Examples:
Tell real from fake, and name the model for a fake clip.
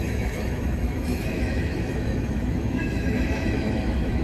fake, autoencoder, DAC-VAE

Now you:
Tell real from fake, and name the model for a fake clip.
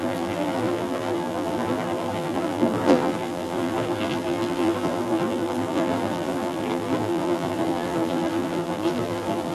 fake, vocoder, BigVGAN v2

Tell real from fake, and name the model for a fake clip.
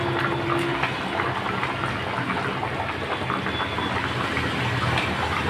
real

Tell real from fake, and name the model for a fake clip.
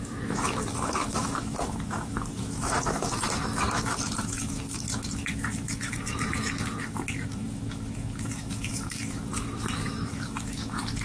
fake, autoencoder, DAC-VAE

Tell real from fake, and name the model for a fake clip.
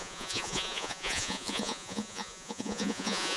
fake, vocoder, Vocos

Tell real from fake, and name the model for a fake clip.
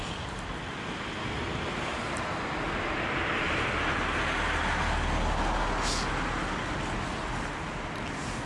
real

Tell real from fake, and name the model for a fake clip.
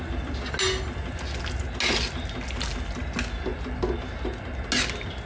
real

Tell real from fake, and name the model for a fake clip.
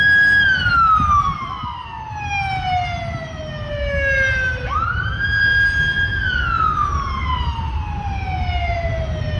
real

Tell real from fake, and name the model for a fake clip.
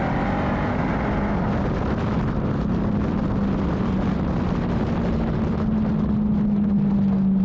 real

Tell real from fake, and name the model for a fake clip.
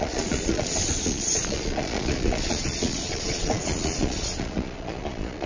fake, vocoder, Vocos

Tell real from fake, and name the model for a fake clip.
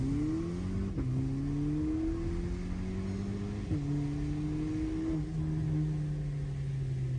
real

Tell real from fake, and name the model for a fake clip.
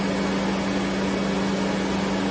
real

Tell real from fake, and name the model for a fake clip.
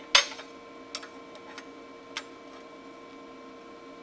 real